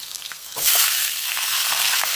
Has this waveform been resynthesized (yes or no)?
yes